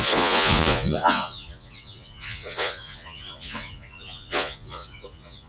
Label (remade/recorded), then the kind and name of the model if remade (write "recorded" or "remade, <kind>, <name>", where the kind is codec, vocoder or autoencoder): remade, vocoder, Vocos